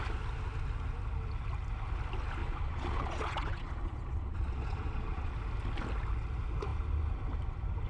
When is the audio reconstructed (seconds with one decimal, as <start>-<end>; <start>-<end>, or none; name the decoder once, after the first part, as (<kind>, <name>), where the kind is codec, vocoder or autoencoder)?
2.4-5.3 (vocoder, Vocos)